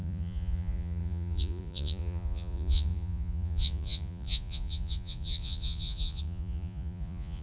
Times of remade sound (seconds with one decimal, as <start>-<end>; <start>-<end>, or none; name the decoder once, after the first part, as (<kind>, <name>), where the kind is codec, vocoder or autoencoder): 0.0-7.4 (vocoder, Vocos)